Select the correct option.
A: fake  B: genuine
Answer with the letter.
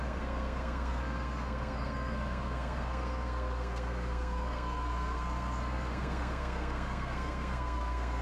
A